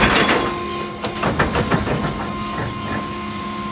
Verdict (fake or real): real